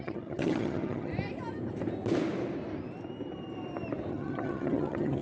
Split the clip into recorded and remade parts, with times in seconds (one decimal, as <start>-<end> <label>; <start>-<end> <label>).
0.0-1.1 remade; 1.1-4.1 recorded; 4.1-5.2 remade